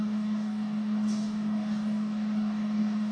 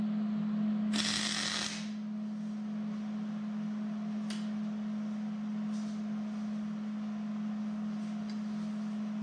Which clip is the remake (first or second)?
first